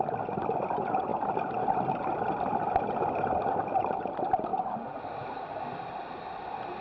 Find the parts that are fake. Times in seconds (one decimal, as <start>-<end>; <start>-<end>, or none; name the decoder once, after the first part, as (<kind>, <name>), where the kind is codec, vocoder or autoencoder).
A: none